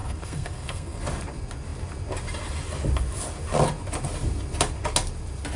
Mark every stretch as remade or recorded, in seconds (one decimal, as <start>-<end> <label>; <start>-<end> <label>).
0.0-1.0 remade; 1.0-5.6 recorded